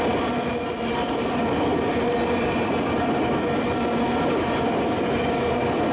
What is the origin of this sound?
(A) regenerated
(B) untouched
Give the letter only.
B